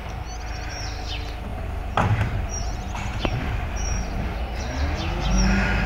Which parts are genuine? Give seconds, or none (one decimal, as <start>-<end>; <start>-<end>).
0.0-1.5; 4.6-5.9